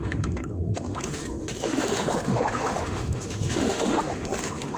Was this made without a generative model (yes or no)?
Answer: no